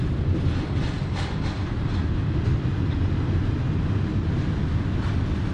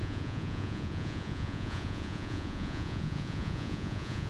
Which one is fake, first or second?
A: second